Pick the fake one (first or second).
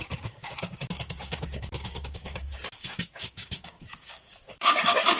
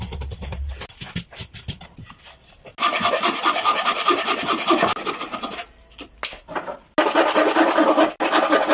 first